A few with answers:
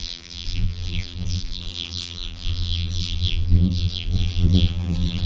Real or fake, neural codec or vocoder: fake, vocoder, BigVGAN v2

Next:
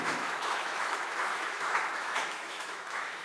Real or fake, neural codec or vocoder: fake, autoencoder, DAC-VAE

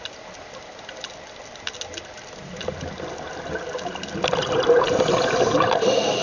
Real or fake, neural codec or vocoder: real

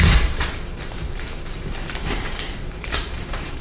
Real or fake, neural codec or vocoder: fake, vocoder, BigVGAN v2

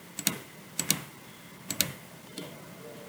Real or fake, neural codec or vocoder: real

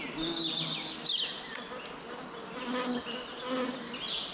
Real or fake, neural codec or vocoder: real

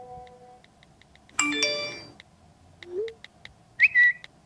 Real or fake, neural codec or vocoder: real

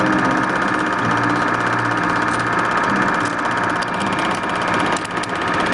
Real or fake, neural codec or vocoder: real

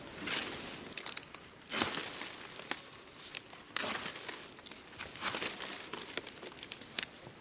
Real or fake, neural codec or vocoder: real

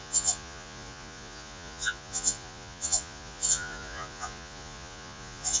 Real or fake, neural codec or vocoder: fake, vocoder, Vocos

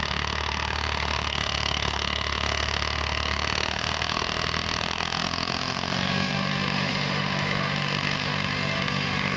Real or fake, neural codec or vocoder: fake, autoencoder, DAC-VAE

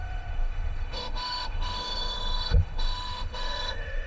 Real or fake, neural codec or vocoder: fake, autoencoder, DAC-VAE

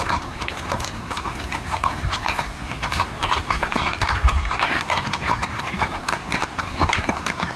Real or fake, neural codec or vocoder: fake, codec, SNAC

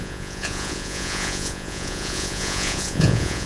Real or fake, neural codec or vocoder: fake, vocoder, Vocos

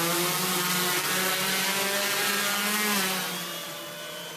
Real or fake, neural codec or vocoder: real